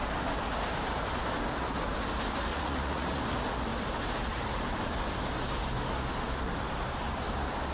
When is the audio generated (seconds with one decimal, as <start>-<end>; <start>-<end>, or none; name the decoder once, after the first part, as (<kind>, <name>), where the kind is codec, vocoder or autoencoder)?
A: 2.5-3.2 (vocoder, Vocos)